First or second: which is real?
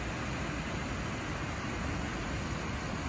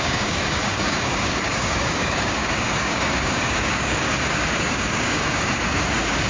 first